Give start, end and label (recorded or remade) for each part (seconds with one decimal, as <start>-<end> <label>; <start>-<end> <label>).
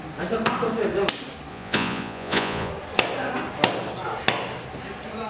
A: 0.0-1.5 recorded; 1.5-2.7 remade; 2.7-5.3 recorded